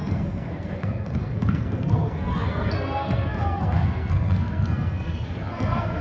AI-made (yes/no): yes